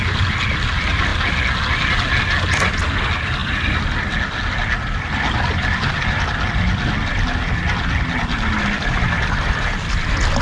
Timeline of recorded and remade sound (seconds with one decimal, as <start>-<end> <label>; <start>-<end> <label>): 0.0-10.4 recorded